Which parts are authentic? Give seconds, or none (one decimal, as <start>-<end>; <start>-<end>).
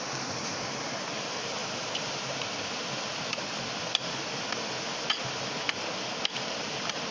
0.0-7.1